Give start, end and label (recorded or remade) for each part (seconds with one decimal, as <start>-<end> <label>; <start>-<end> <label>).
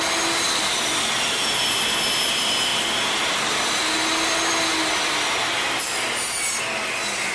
0.0-7.3 recorded